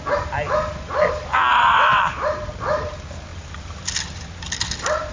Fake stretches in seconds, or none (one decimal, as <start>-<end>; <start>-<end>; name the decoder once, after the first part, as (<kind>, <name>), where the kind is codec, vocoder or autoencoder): 1.5-2.0 (vocoder, WaveNeXt)